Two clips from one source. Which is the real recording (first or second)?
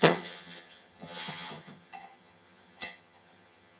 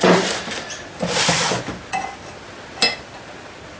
second